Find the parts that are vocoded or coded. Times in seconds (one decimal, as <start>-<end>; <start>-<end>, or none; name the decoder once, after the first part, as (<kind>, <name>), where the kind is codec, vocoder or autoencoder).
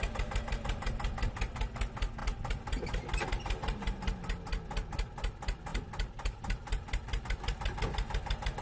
5.7-7.2 (vocoder, BigVGAN v2)